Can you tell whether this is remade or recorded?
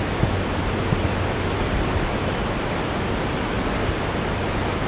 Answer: recorded